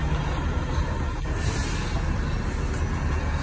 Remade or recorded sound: recorded